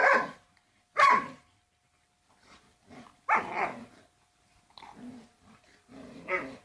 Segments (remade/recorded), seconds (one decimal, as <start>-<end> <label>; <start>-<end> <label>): 0.0-4.0 remade; 4.0-5.1 recorded; 5.1-6.6 remade